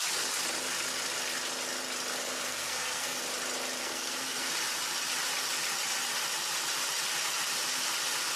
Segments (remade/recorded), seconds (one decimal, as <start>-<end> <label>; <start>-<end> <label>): 0.0-2.2 recorded; 2.2-3.2 remade; 3.2-3.8 recorded; 3.8-4.5 remade; 4.5-8.4 recorded